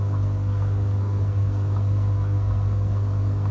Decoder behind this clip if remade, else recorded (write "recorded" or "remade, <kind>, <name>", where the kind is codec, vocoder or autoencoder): remade, codec, SNAC